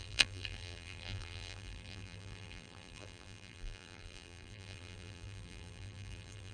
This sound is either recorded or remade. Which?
remade